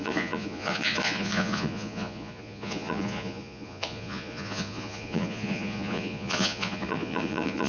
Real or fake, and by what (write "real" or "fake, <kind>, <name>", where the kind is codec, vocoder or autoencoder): fake, vocoder, Vocos